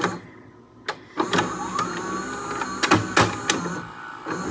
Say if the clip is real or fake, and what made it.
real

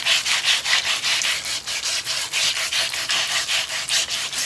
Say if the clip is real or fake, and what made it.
real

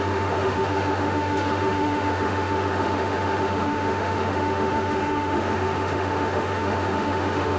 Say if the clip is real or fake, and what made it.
fake, autoencoder, DAC-VAE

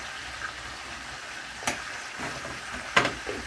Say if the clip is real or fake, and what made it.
real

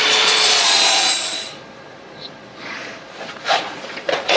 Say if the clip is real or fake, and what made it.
fake, vocoder, Vocos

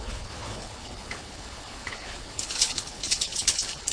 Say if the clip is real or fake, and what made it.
fake, codec, HILCodec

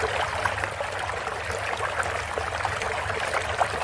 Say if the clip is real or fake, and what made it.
real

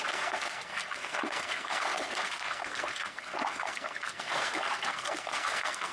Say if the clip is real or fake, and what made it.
fake, codec, SNAC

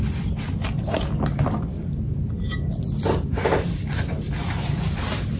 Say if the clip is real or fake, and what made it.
real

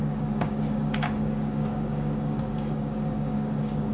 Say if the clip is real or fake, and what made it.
fake, codec, DAC